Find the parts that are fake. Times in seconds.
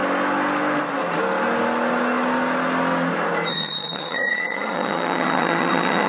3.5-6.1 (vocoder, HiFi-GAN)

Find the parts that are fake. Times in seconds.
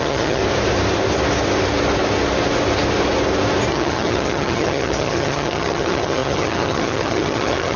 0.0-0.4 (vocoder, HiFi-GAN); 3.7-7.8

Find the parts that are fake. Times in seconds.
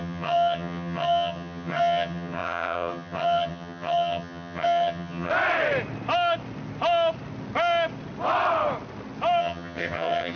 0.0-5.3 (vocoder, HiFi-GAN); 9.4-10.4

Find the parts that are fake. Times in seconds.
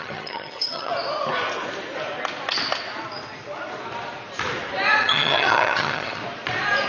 0.0-0.9 (vocoder, HiFi-GAN); 5.0-6.2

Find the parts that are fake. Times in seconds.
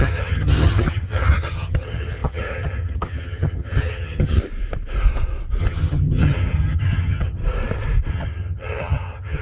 0.0-4.4 (vocoder, HiFi-GAN); 5.6-7.4; 8.1-9.4